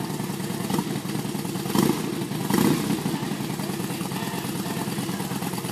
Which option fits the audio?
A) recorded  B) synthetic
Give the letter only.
A